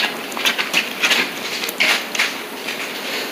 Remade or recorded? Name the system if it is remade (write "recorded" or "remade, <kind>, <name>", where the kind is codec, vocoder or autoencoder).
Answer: recorded